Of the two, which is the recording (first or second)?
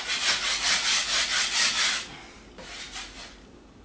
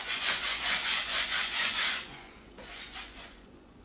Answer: first